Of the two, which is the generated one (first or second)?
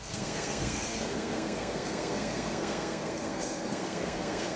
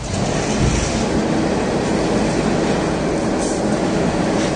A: first